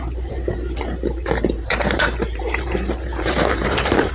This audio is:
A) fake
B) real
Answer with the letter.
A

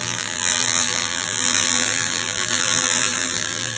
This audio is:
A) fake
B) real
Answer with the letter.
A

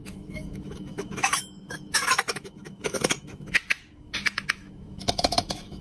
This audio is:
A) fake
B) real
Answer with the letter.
A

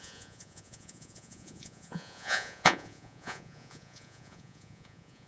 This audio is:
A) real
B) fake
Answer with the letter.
B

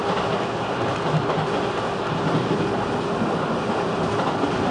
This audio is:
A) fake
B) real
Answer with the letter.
B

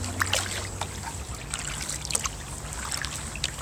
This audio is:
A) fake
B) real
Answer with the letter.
B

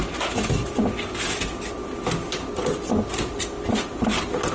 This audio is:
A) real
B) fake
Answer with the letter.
A